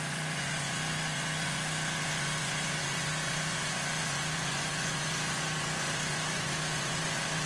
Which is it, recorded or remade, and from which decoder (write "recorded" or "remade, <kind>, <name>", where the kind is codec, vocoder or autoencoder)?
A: remade, vocoder, Vocos